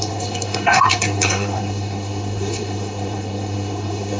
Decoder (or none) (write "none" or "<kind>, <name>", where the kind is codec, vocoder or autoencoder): codec, SNAC